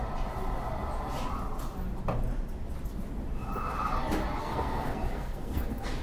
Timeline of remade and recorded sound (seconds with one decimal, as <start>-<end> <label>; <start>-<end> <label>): 0.0-4.4 recorded; 4.4-6.0 remade